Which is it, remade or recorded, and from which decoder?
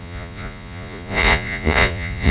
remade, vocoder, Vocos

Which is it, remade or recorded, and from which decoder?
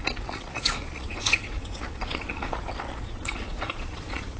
remade, vocoder, Vocos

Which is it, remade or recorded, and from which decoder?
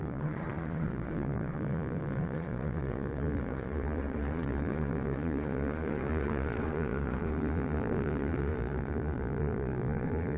remade, vocoder, Vocos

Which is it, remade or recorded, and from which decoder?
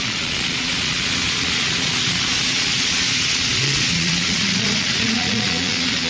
remade, vocoder, Vocos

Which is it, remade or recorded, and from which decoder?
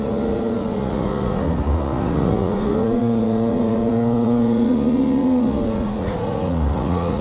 remade, vocoder, Vocos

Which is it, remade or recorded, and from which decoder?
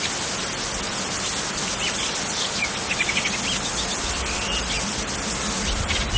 recorded